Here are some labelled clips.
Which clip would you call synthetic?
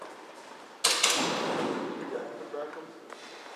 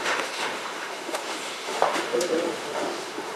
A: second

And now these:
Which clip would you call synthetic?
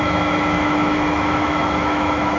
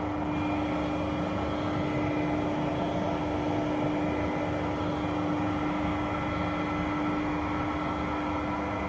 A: first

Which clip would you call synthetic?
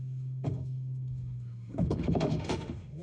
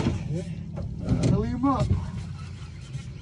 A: first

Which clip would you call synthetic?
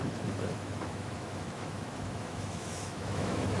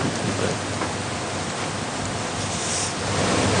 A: first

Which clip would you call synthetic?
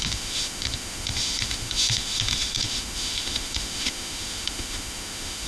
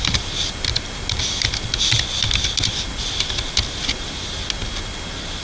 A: first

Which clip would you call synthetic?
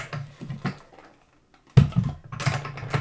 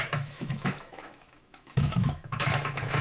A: second